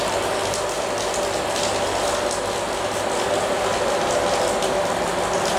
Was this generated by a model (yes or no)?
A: no